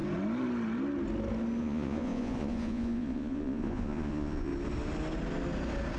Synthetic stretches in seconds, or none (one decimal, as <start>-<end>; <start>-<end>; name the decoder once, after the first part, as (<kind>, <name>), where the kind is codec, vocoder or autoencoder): 1.6-4.5 (vocoder, Vocos)